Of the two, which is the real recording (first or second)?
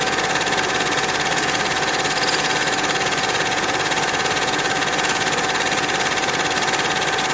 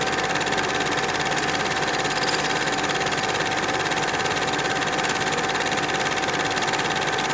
second